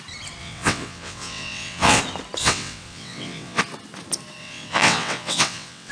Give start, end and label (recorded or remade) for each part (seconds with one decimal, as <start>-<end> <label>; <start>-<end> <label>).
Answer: 0.0-0.4 recorded; 0.4-2.0 remade; 2.0-2.4 recorded; 2.4-3.6 remade; 3.6-4.4 recorded; 4.4-5.9 remade

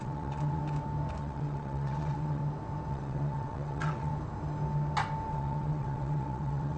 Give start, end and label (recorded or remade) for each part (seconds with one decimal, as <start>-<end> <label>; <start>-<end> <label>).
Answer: 0.0-0.6 remade; 0.6-1.2 recorded; 1.2-2.4 remade; 2.4-2.9 recorded; 2.9-4.1 remade; 4.1-5.3 recorded; 5.3-6.8 remade